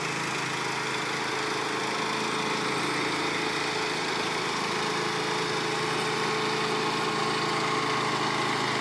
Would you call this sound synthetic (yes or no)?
no